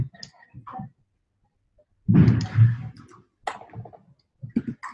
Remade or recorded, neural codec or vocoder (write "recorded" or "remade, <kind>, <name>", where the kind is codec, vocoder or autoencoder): recorded